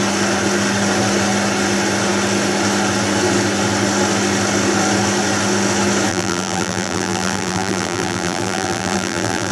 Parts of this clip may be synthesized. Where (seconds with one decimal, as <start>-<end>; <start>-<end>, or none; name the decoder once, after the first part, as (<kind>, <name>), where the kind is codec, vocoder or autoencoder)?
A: 6.1-9.5 (vocoder, BigVGAN v2)